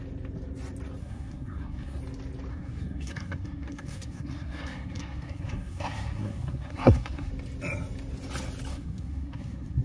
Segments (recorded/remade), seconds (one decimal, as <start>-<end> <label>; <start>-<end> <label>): 0.0-1.0 recorded; 1.0-2.0 remade; 2.0-2.5 recorded; 2.5-7.3 remade; 7.3-8.7 recorded; 8.7-9.8 remade

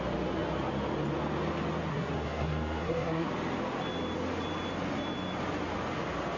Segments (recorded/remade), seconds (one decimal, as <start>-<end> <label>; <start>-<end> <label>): 0.0-1.9 recorded; 1.9-3.3 remade; 3.3-6.4 recorded

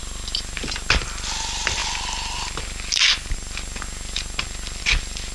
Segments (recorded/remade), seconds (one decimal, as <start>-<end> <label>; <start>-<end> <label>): 0.0-5.3 recorded